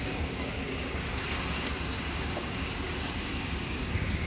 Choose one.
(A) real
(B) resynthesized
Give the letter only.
B